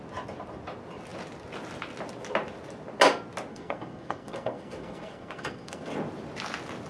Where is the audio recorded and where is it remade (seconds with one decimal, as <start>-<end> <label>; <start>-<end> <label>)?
0.0-3.5 recorded; 3.5-5.9 remade; 5.9-6.9 recorded